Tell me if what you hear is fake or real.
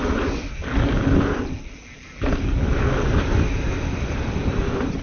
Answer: real